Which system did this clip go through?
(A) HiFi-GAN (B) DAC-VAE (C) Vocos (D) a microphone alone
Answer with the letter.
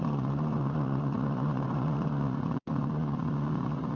C